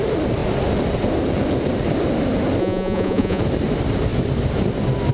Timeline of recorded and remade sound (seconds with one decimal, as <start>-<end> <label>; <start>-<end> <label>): 0.0-2.6 recorded; 2.6-3.4 remade; 3.4-5.1 recorded